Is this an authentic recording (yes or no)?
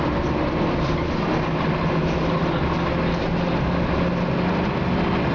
yes